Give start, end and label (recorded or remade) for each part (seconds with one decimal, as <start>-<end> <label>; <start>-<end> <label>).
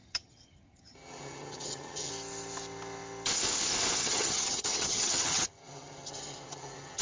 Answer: 0.0-2.1 remade; 2.1-4.0 recorded; 4.0-7.0 remade